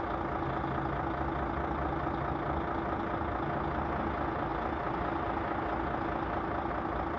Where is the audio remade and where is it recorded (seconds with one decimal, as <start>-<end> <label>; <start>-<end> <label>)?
0.0-7.2 recorded